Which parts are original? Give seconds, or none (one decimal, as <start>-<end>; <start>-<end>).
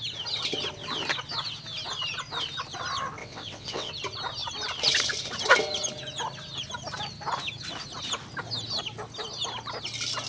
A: 0.0-3.2; 3.9-10.3